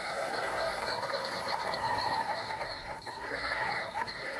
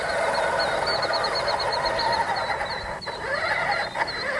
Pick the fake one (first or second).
first